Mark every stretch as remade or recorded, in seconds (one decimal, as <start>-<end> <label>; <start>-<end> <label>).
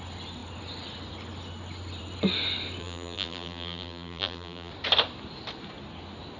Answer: 0.0-2.8 recorded; 2.8-4.7 remade; 4.7-6.4 recorded